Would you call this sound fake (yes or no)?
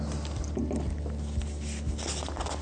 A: no